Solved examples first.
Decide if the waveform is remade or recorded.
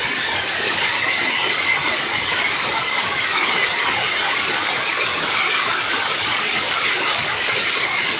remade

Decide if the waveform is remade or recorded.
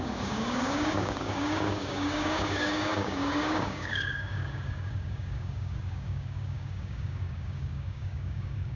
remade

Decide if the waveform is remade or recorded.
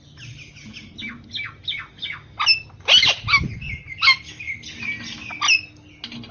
recorded